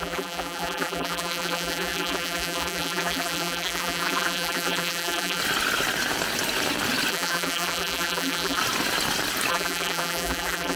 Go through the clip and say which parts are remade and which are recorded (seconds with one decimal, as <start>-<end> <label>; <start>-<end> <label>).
0.0-5.4 remade; 5.4-7.1 recorded; 7.1-8.6 remade; 8.6-9.5 recorded; 9.5-10.8 remade